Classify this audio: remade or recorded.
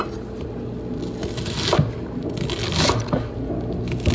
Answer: recorded